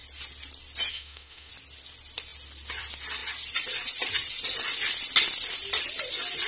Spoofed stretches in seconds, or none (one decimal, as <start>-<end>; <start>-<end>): 0.9-1.5